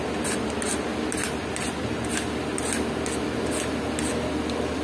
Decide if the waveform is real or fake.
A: real